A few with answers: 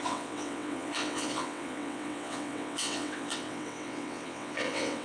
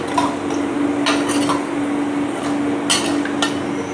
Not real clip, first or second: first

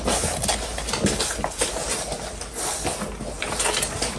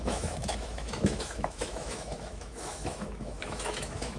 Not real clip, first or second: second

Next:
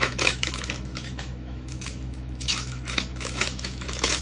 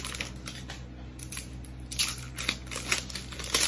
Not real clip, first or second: first